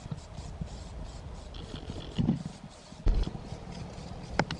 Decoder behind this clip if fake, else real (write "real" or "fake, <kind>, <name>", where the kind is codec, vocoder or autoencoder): real